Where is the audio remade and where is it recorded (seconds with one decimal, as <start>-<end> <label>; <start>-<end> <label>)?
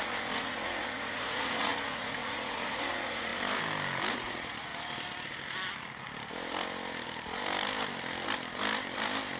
0.0-3.3 remade; 3.3-4.1 recorded; 4.1-4.7 remade; 4.7-9.4 recorded